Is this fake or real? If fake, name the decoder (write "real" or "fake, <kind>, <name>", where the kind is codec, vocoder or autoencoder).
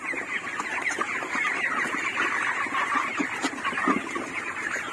real